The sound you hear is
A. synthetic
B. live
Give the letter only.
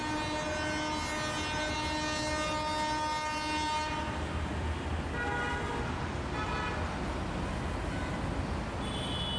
B